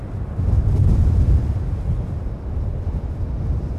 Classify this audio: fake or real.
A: real